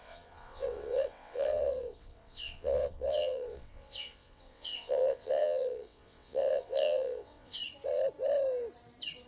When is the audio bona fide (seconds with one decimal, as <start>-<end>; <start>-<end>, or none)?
7.6-9.3